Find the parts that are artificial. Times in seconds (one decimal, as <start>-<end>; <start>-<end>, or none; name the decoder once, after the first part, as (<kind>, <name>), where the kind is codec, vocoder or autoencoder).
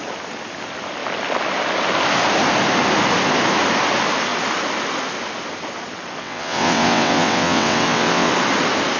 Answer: 6.2-8.3 (vocoder, WaveNeXt)